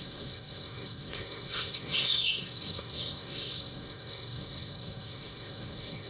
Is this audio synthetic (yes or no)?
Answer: yes